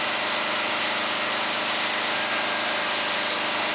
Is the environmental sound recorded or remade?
recorded